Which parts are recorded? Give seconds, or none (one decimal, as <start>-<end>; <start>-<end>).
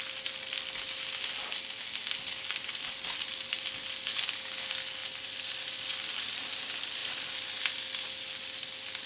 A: 0.0-9.1